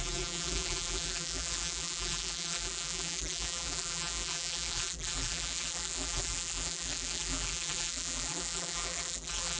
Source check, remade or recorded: remade